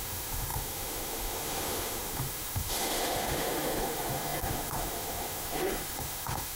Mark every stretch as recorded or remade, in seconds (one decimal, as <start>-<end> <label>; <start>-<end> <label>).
0.0-6.6 remade